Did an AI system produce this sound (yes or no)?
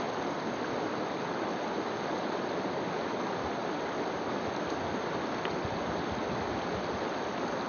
no